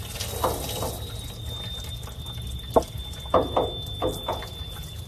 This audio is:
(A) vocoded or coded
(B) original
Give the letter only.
B